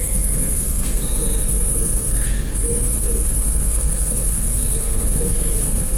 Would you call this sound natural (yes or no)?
no